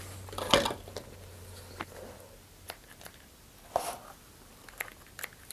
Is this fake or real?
real